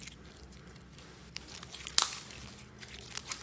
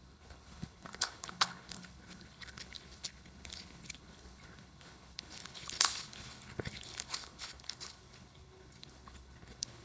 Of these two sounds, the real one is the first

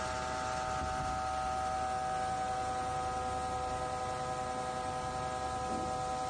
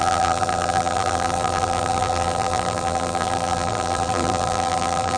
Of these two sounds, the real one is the first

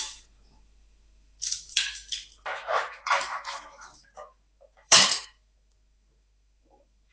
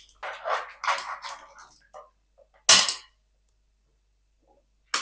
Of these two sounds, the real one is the second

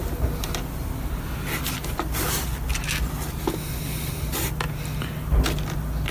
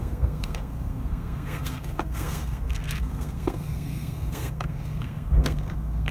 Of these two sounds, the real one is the first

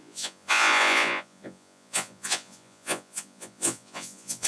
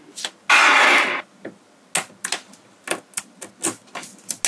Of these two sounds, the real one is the second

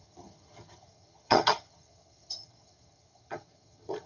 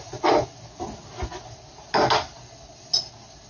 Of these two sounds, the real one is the second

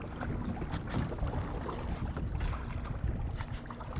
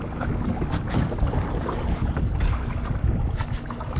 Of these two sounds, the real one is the first